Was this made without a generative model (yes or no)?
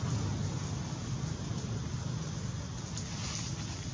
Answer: yes